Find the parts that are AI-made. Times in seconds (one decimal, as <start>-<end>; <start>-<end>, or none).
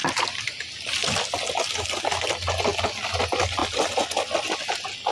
none